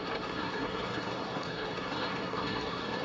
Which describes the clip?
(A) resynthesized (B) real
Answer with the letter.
A